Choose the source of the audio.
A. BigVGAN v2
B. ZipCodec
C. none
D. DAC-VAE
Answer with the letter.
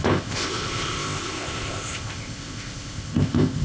B